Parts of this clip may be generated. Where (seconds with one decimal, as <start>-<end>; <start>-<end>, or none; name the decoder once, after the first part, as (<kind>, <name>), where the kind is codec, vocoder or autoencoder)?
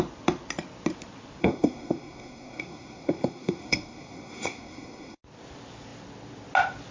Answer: 1.4-5.2 (codec, SNAC)